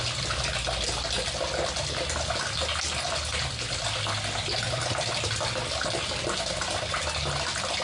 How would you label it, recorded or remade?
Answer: recorded